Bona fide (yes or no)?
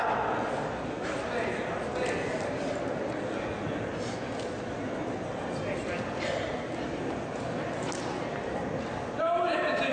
yes